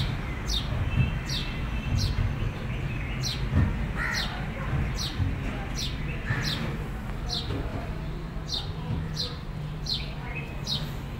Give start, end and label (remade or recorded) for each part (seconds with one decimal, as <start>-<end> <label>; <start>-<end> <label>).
0.0-1.4 recorded; 1.4-3.4 remade; 3.4-7.7 recorded; 7.7-10.4 remade; 10.4-11.2 recorded